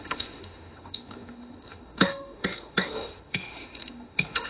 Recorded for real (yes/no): no